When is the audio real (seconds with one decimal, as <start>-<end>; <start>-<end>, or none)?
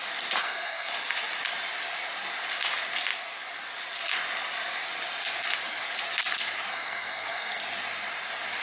0.0-0.4; 0.9-6.7; 7.6-8.6